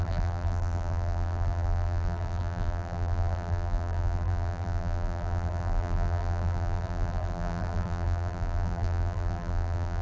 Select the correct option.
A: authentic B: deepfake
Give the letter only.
B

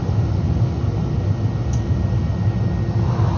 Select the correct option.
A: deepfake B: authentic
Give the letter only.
B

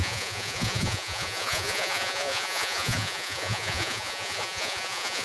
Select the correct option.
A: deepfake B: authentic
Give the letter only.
A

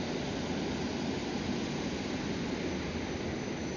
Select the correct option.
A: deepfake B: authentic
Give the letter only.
B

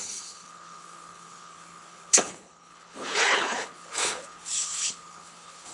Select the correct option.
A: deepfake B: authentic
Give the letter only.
A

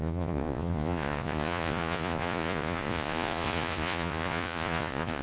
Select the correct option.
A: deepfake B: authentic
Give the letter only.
A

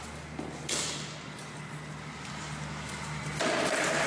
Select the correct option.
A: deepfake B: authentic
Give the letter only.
B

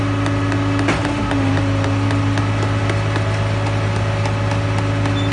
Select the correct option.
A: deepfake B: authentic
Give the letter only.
B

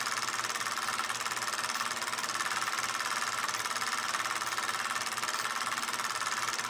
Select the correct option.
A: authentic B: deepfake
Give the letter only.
A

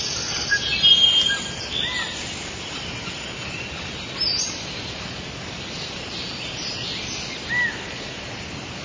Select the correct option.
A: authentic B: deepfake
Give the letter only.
A